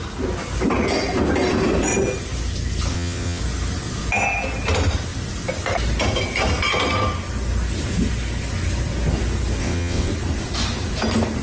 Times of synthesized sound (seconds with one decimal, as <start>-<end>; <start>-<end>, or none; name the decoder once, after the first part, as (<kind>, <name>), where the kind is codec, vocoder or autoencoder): 2.9-3.4 (vocoder, WaveNeXt); 9.6-10.1